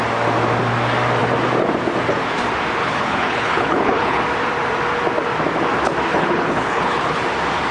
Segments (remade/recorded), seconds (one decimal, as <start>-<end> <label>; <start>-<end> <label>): 0.0-2.8 recorded; 2.8-4.2 remade; 4.2-6.1 recorded; 6.1-7.2 remade; 7.2-7.7 recorded

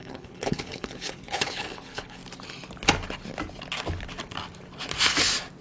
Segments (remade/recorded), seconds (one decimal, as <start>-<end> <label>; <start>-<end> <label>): 0.0-2.2 remade; 2.2-5.6 recorded

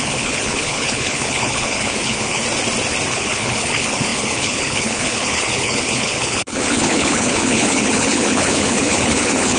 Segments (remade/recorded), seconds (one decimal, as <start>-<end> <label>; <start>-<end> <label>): 0.0-2.4 remade; 2.4-3.1 recorded; 3.1-9.6 remade

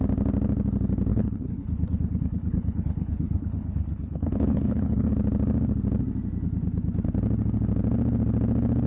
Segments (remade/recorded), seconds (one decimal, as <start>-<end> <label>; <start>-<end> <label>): 0.0-1.1 recorded; 1.1-5.1 remade; 5.1-8.9 recorded

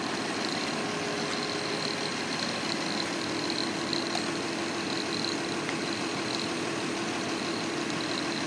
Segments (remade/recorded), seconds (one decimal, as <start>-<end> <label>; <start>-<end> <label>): 0.0-8.5 recorded

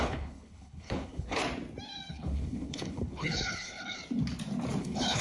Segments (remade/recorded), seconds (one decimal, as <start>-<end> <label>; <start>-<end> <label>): 0.0-1.4 remade; 1.4-2.1 recorded; 2.1-4.0 remade; 4.0-4.8 recorded; 4.8-5.2 remade